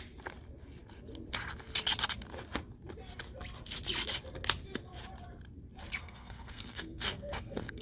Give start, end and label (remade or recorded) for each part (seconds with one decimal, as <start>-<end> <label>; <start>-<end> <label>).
0.0-6.0 recorded; 6.0-7.8 remade